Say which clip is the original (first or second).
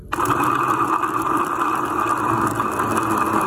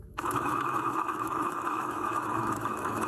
first